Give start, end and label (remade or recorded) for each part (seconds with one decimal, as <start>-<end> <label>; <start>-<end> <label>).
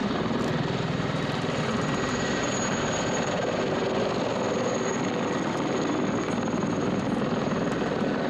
0.0-3.7 remade; 3.7-8.3 recorded